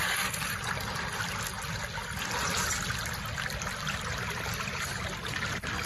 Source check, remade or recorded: recorded